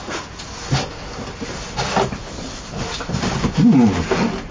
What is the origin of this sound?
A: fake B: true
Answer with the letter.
B